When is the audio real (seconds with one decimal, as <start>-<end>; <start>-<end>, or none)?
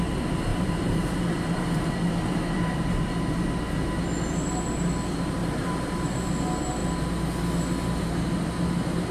0.0-0.5; 3.1-5.4; 6.3-9.1